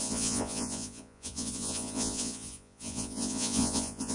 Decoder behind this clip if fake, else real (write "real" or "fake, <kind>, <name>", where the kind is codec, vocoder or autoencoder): fake, vocoder, Vocos